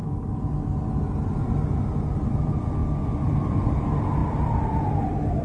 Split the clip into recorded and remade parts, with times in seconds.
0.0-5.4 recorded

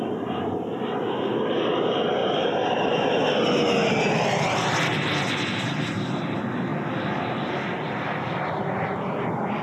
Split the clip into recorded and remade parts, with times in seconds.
0.0-9.6 recorded

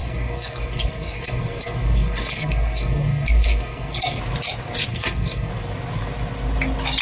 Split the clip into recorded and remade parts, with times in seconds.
0.0-4.2 remade; 4.2-4.9 recorded; 4.9-5.5 remade; 5.5-7.0 recorded

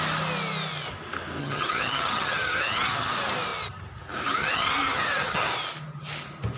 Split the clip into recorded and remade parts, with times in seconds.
0.0-1.4 recorded; 1.4-3.1 remade; 3.1-4.4 recorded; 4.4-5.5 remade; 5.5-6.6 recorded

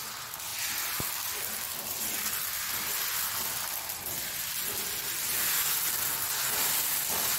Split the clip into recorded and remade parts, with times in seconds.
0.0-7.4 recorded

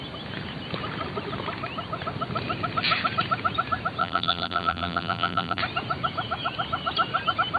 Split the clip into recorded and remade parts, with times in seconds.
0.0-4.0 recorded; 4.0-5.6 remade; 5.6-7.6 recorded

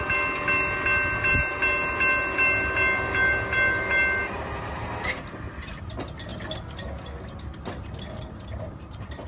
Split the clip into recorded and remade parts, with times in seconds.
0.0-9.3 recorded

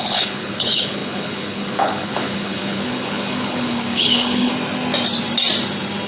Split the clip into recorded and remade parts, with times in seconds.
0.0-4.5 remade; 4.5-6.1 recorded